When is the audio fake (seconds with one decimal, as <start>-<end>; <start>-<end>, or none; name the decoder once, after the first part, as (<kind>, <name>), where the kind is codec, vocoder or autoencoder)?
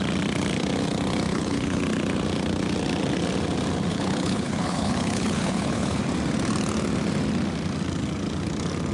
1.3-1.8 (codec, HILCodec); 3.9-6.0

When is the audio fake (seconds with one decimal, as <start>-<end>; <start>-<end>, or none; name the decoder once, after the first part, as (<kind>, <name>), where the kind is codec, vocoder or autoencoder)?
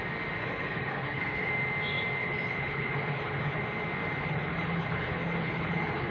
0.4-1.5 (codec, HILCodec); 2.2-3.6; 4.2-6.1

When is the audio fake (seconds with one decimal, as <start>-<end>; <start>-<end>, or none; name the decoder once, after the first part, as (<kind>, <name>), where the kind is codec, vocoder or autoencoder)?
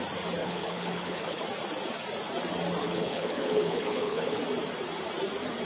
0.4-1.4 (codec, HILCodec); 2.8-4.4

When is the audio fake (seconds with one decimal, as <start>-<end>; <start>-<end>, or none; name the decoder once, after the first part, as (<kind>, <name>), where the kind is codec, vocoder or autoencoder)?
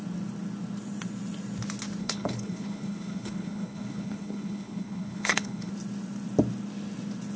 2.0-5.7 (codec, HILCodec)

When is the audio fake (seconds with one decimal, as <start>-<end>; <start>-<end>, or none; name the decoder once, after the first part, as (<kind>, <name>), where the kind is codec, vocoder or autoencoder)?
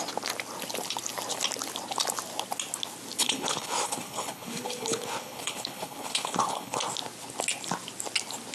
3.2-6.8 (codec, HILCodec)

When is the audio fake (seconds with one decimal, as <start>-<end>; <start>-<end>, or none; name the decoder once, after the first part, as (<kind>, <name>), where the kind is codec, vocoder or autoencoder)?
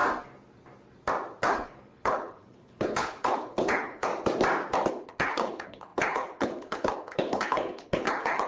1.4-4.1 (codec, HILCodec); 4.9-8.5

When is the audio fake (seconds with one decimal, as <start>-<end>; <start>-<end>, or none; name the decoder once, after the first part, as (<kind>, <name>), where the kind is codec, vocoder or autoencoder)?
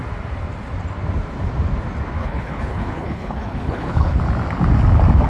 2.2-4.2 (codec, HILCodec)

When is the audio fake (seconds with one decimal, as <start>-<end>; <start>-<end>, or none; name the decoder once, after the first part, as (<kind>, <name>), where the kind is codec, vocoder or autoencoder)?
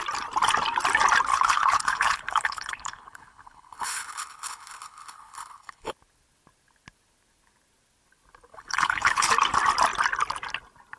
1.3-5.9 (codec, HILCodec); 8.5-9.3